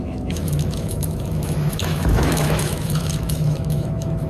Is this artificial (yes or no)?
yes